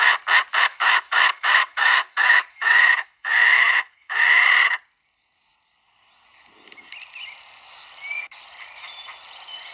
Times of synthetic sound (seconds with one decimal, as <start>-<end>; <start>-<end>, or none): 0.7-4.4